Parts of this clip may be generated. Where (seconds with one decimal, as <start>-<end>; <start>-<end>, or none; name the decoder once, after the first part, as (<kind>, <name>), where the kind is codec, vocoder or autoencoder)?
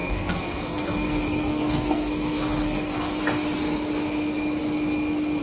0.0-3.2 (codec, SNAC)